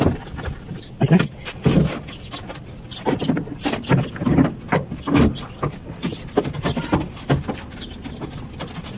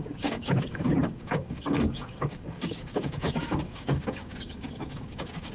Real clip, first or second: first